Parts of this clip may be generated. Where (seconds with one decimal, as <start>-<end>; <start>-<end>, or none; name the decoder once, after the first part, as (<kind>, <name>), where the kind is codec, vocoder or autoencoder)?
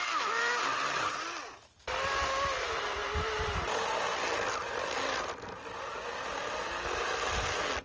none